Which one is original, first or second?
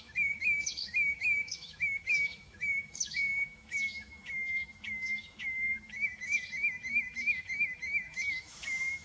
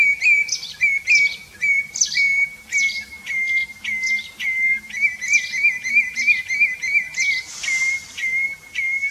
second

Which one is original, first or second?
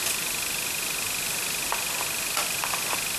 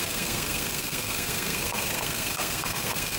first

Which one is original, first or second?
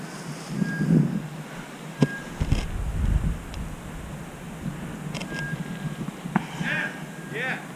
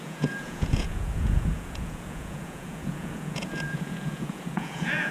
first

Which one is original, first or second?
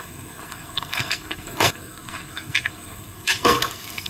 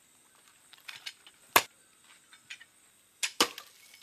second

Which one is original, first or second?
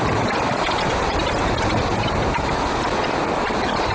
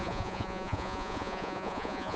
first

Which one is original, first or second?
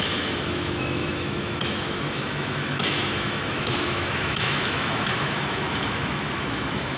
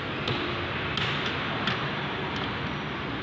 second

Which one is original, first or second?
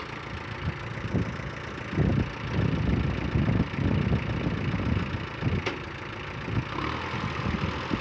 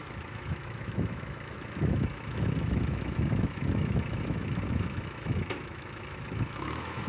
first